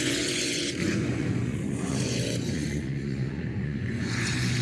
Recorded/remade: remade